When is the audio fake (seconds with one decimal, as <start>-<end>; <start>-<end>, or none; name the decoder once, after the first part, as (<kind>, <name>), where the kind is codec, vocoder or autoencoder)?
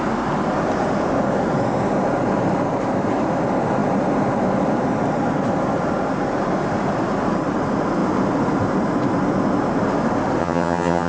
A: 10.4-11.1 (vocoder, HiFi-GAN)